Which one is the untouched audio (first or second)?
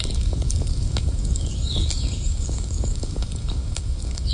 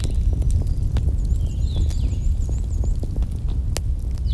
second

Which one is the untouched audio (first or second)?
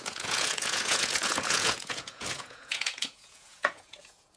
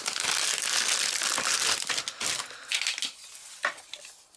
second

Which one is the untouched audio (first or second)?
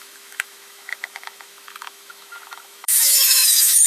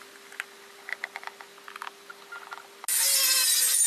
second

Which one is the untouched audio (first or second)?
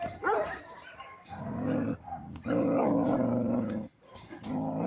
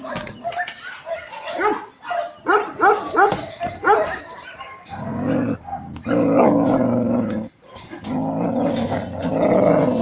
second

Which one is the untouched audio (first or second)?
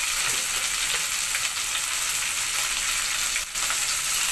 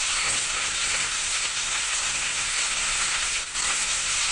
first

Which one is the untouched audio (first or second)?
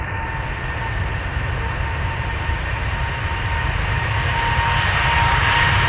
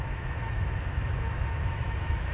first